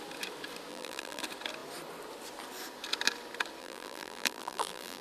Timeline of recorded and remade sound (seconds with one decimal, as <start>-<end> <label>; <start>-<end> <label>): 0.0-0.7 recorded; 0.7-1.2 remade; 1.2-3.6 recorded; 3.6-5.0 remade